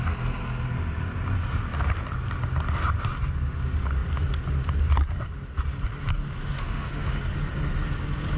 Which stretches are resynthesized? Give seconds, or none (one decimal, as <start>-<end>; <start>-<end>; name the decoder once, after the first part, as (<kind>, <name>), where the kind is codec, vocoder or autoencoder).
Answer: 6.4-7.2 (autoencoder, DAC-VAE)